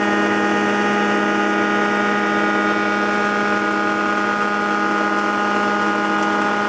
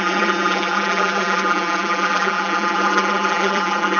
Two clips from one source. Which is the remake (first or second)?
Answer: second